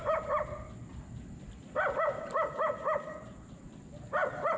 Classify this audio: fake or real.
real